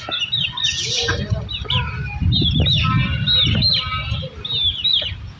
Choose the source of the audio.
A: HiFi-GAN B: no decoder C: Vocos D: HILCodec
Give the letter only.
B